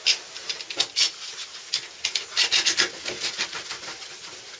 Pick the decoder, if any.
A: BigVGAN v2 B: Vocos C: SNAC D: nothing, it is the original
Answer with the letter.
D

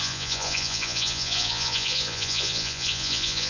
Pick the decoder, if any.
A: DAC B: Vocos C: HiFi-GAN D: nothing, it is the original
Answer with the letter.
B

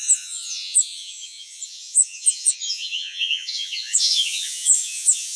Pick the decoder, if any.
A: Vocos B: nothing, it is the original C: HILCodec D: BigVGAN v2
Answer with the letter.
A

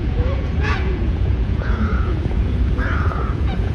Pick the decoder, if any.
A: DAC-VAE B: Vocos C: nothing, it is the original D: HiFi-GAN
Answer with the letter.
B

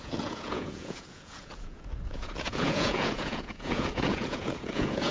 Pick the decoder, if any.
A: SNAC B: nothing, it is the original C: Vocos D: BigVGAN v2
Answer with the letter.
C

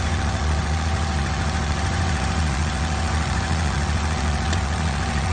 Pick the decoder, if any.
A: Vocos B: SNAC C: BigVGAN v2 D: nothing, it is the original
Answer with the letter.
A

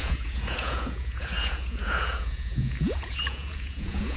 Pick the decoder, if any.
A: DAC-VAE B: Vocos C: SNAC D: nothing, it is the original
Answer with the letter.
B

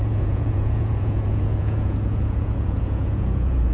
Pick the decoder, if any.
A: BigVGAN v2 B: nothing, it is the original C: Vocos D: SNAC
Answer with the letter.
C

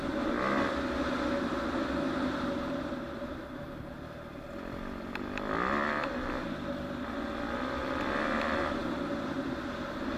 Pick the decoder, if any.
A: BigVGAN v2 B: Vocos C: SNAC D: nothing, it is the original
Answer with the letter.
D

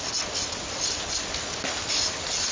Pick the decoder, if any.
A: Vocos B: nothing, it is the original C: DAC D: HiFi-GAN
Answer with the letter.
B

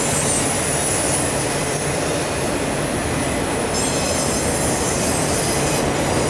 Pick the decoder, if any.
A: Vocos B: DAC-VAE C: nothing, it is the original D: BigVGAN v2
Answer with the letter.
C